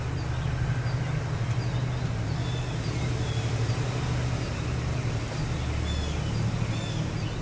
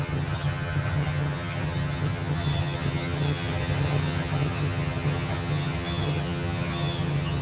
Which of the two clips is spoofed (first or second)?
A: second